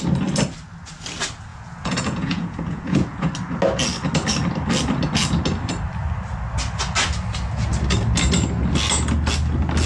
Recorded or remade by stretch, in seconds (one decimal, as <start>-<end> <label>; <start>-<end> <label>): 0.0-1.5 recorded; 1.5-3.3 remade; 3.3-9.9 recorded